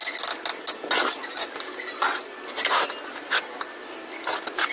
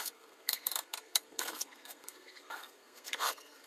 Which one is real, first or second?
first